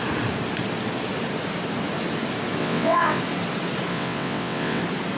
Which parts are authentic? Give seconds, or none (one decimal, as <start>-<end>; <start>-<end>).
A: 0.0-2.6; 3.2-3.9; 4.8-5.2